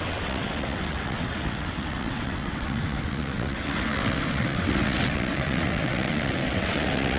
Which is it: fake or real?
fake